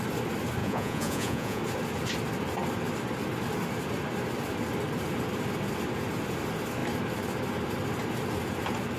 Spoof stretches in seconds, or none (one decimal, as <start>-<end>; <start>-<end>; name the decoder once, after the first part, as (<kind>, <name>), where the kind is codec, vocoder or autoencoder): 0.6-1.6 (vocoder, Vocos)